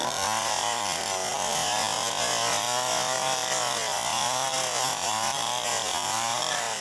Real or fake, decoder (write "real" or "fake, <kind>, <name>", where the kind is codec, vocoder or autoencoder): real